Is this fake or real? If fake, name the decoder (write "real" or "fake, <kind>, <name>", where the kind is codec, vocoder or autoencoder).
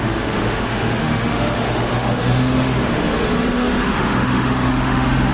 fake, autoencoder, DAC-VAE